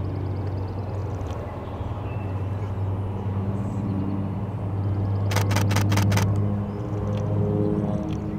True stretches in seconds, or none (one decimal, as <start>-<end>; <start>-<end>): 0.0-1.0; 4.0-8.4